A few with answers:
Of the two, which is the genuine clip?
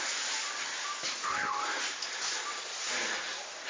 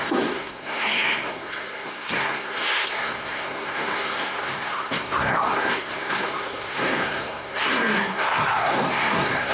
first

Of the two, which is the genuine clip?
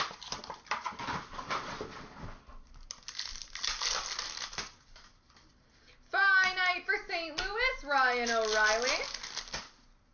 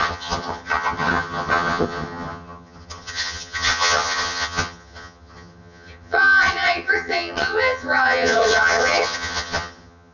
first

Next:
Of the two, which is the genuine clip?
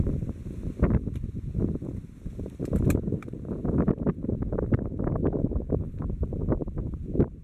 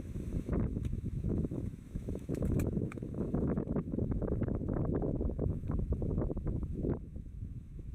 first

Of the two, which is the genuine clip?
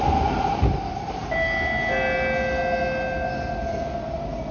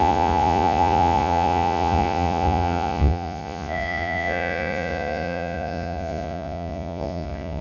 first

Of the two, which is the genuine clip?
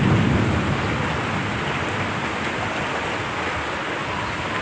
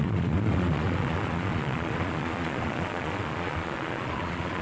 first